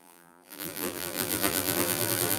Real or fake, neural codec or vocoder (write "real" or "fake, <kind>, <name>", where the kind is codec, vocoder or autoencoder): fake, vocoder, BigVGAN v2